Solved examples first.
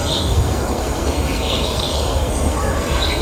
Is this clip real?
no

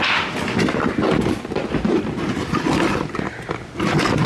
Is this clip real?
yes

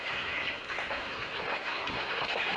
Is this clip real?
no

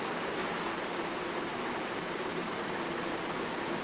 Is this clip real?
yes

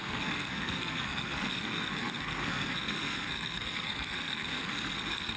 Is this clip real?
no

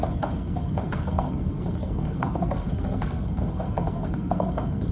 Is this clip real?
no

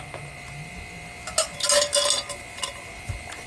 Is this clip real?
yes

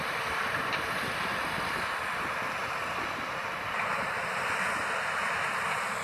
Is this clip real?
yes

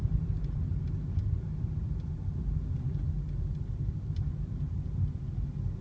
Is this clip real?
yes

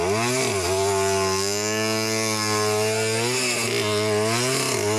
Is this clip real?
yes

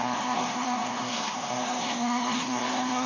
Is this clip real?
no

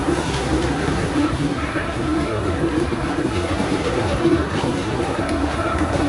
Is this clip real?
no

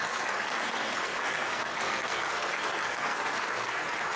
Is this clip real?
no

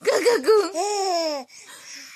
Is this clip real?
yes